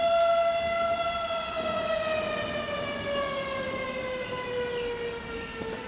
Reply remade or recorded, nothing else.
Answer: recorded